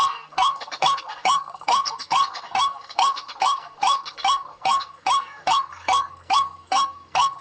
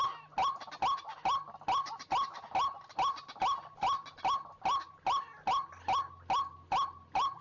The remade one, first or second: first